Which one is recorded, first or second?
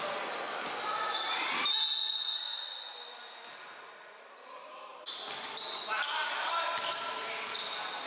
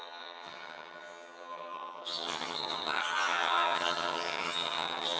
first